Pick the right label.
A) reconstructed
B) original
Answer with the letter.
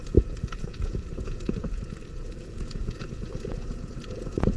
A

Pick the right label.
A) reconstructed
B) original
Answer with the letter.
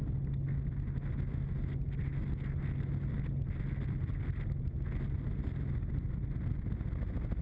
B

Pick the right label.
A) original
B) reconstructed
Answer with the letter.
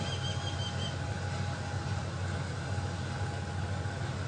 A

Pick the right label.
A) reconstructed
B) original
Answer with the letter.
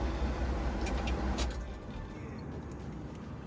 B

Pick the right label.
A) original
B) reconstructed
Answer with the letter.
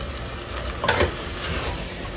A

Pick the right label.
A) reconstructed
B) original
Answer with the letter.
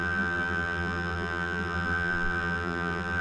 A